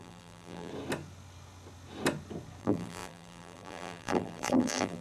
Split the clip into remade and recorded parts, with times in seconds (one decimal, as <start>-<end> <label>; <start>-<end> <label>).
0.0-0.7 remade; 0.7-2.6 recorded; 2.6-5.0 remade